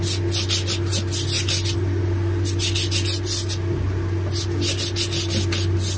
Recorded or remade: recorded